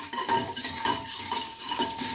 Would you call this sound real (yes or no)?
no